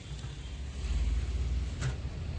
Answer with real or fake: real